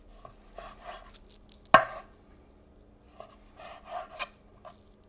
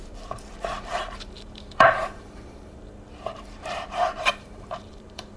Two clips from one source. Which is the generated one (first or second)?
second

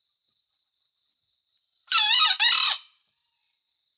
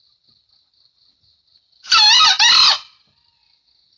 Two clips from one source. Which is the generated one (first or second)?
first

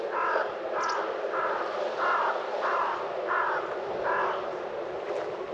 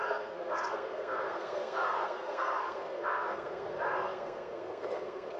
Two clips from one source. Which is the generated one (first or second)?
second